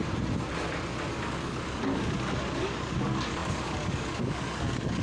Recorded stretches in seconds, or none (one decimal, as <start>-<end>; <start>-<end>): 0.0-1.1